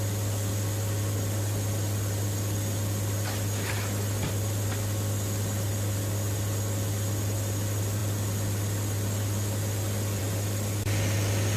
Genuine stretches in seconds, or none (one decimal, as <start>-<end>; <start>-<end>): 0.0-11.6